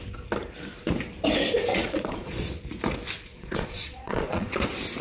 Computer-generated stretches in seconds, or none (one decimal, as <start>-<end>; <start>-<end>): 1.7-2.5; 3.3-4.5